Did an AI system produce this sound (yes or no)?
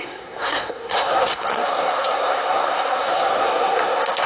yes